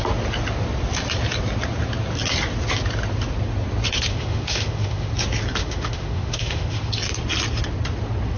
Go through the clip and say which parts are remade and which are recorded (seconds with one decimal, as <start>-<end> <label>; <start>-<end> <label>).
0.0-4.1 recorded; 4.1-5.1 remade; 5.1-5.6 recorded; 5.6-6.9 remade; 6.9-8.4 recorded